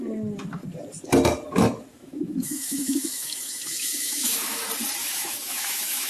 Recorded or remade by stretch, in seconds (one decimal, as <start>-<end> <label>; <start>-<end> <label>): 0.0-1.9 recorded; 1.9-4.6 remade; 4.6-5.0 recorded; 5.0-6.1 remade

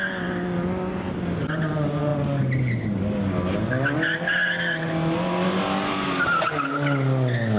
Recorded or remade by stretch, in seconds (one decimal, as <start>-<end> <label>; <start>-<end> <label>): 0.0-7.6 recorded

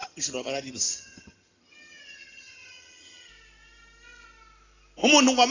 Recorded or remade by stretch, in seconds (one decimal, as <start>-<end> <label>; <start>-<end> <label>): 0.0-3.3 remade; 3.3-5.5 recorded

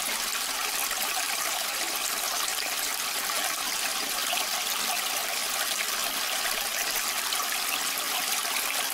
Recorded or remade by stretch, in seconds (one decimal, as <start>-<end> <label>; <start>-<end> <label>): 0.0-8.9 recorded

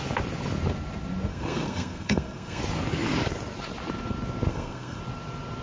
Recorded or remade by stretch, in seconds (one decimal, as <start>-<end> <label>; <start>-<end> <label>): 0.0-1.3 recorded; 1.3-2.6 remade; 2.6-4.5 recorded; 4.5-5.0 remade; 5.0-5.6 recorded